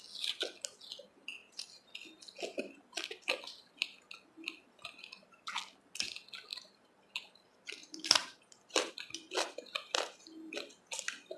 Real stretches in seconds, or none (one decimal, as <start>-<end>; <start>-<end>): 0.0-6.5; 7.1-7.8; 8.9-11.4